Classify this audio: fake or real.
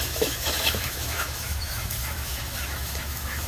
fake